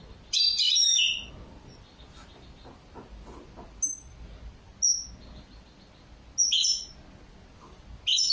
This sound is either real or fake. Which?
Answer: real